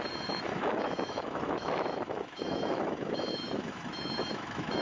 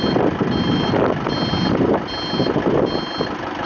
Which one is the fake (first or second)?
first